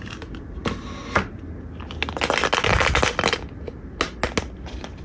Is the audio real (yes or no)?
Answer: yes